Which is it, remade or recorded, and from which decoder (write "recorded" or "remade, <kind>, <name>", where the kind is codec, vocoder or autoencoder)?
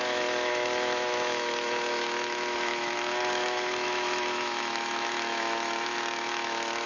remade, autoencoder, DAC-VAE